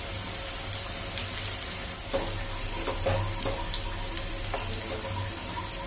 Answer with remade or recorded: recorded